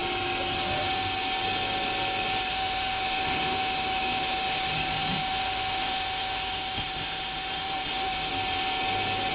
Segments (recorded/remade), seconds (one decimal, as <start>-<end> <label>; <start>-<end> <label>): 0.0-2.5 recorded; 2.5-8.3 remade; 8.3-9.3 recorded